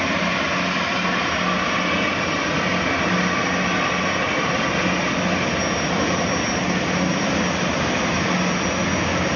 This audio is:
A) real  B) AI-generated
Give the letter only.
A